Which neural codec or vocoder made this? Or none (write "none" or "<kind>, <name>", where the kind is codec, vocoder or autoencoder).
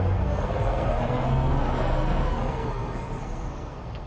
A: codec, SNAC